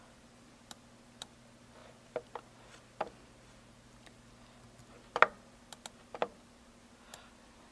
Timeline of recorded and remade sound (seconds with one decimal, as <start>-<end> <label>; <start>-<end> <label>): 0.0-7.7 recorded